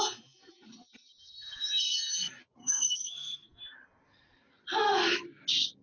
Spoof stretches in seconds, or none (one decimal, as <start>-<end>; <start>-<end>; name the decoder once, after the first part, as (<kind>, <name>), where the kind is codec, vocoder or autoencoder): 2.6-3.6 (codec, SNAC)